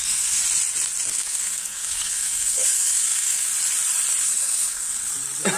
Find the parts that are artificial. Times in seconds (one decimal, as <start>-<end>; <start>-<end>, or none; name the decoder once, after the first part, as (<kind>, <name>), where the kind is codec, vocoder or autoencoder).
0.0-0.4 (codec, SNAC); 1.1-3.5; 4.2-5.1